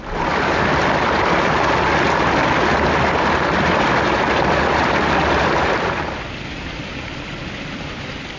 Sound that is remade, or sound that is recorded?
recorded